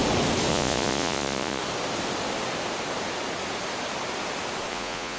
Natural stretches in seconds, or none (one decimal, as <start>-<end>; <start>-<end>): 0.0-0.5; 1.6-4.7